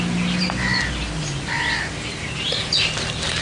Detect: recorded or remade recorded